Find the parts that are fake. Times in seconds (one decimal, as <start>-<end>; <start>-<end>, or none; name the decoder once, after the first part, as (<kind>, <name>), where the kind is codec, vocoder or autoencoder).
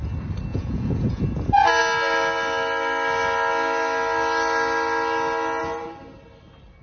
0.5-1.2 (vocoder, Vocos)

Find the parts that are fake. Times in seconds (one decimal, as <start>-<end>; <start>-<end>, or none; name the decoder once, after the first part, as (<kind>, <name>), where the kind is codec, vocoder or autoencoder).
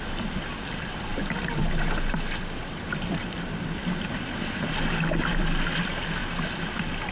none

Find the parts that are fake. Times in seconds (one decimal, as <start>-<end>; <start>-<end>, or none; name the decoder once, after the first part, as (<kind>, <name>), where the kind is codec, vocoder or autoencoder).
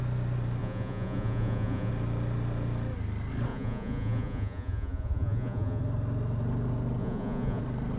0.6-1.9 (vocoder, Vocos); 3.5-5.8; 7.0-7.6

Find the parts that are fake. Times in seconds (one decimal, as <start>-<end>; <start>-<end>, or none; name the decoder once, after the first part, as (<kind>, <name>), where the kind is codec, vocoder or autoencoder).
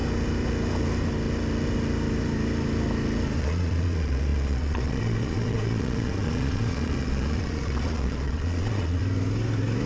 3.4-9.0 (vocoder, Vocos)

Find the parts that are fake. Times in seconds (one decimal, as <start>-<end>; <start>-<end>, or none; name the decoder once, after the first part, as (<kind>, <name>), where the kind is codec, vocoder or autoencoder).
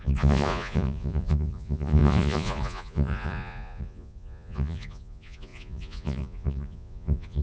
0.0-7.4 (vocoder, Vocos)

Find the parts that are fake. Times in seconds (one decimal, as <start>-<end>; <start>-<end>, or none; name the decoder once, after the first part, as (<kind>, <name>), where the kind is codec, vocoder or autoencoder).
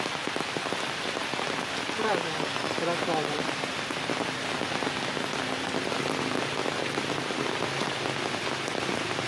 none